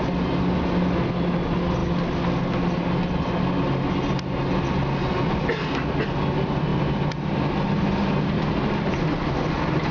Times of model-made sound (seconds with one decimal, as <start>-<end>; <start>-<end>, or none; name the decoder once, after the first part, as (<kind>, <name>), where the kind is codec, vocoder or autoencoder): none

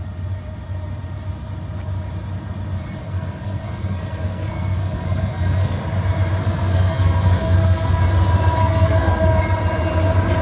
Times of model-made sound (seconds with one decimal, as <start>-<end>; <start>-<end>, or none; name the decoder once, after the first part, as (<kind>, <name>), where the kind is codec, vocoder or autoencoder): 3.0-5.8 (codec, SNAC); 6.4-8.0; 8.6-9.4

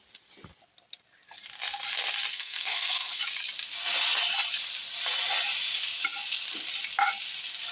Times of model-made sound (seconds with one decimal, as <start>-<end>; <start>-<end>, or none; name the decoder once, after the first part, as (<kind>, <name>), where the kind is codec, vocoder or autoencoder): 2.3-3.2 (codec, SNAC)

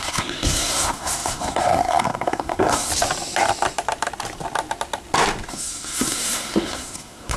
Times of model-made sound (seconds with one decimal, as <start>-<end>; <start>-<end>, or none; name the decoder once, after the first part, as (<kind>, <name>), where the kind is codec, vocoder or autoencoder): 0.0-2.9 (codec, SNAC); 5.5-7.4

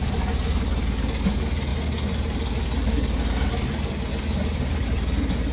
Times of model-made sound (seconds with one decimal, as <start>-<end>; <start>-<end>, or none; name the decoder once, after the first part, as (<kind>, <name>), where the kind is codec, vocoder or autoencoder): none